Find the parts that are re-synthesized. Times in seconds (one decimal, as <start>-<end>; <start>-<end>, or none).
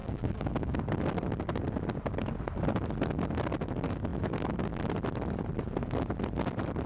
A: 0.0-0.8